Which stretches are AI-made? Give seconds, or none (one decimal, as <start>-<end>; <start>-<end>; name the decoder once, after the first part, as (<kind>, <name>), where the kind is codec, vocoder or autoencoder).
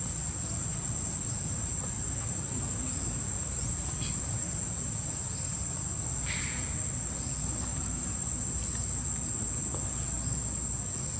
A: 0.7-5.6 (vocoder, BigVGAN v2); 7.7-8.4